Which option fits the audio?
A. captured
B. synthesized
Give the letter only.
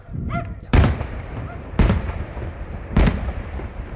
B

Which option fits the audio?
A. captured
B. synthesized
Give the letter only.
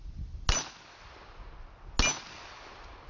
A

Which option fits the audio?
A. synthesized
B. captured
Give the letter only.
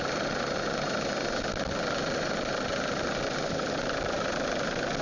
B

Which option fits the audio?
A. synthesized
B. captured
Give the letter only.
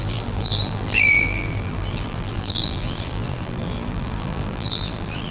A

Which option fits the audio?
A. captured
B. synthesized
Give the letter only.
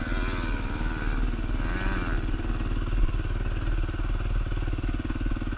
A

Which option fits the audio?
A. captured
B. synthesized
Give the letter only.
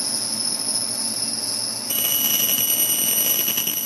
A